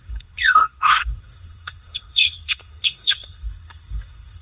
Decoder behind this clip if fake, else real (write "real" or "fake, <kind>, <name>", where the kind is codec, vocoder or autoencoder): fake, codec, SNAC